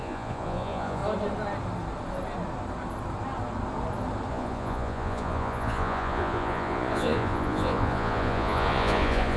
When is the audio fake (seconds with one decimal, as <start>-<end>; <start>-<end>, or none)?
0.0-1.0; 4.3-9.4